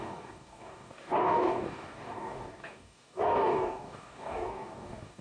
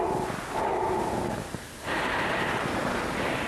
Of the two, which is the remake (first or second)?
first